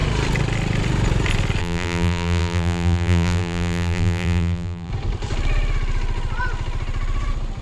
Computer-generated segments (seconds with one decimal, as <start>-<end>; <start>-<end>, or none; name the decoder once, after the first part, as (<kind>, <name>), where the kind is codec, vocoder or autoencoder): 1.6-4.9 (vocoder, BigVGAN v2)